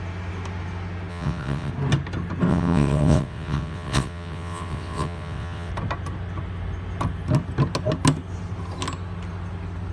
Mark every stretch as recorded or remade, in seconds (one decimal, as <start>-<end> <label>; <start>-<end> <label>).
0.0-1.1 recorded; 1.1-1.7 remade; 1.7-2.5 recorded; 2.5-5.7 remade; 5.7-9.9 recorded